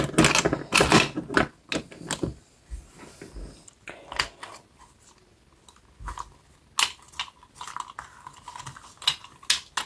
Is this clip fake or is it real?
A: real